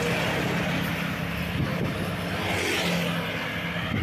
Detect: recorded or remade recorded